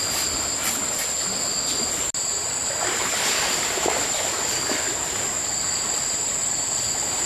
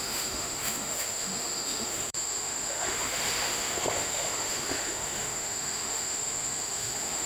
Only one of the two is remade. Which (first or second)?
second